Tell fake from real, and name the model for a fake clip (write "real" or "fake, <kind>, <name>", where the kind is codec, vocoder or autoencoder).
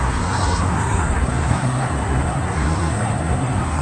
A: fake, codec, SNAC